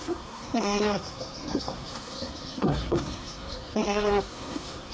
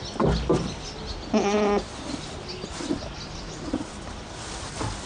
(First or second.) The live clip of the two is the second